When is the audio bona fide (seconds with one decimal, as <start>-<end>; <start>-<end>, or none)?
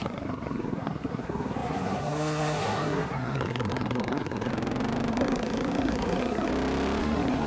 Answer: 4.5-5.1; 6.5-7.0